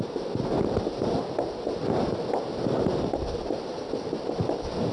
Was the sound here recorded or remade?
recorded